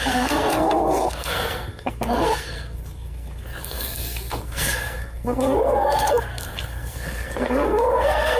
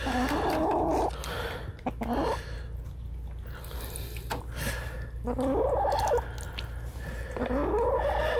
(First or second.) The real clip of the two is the second